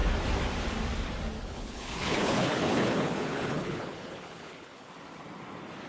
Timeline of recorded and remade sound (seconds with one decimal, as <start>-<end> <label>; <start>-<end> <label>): 0.0-1.4 recorded; 1.4-4.9 remade; 4.9-5.9 recorded